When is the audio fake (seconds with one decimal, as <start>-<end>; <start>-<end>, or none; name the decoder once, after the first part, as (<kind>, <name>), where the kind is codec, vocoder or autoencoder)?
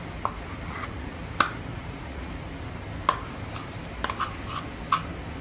0.7-1.2 (vocoder, Vocos); 1.7-2.3